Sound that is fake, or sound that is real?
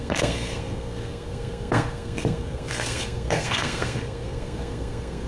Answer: fake